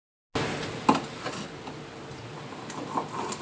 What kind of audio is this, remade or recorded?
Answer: recorded